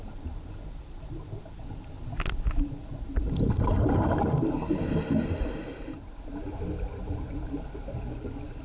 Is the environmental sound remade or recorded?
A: recorded